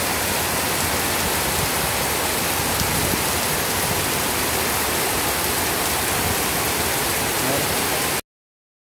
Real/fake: real